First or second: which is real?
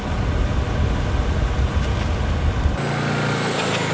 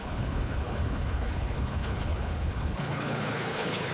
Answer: first